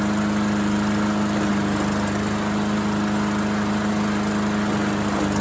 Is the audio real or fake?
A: real